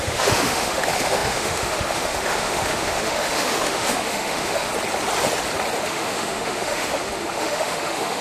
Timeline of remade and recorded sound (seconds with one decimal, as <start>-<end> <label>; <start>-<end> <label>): 0.0-4.7 remade; 4.7-5.9 recorded; 5.9-8.2 remade